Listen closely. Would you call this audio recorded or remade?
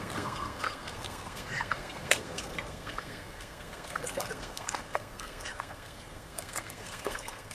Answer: remade